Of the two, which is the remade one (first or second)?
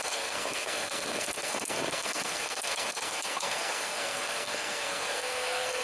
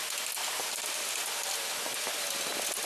first